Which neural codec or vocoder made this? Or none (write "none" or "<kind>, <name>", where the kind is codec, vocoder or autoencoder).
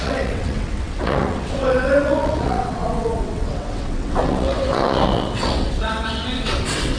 vocoder, WaveNeXt